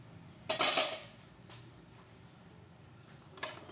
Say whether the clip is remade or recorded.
recorded